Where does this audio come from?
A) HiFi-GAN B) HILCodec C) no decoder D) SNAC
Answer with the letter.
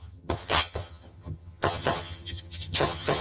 A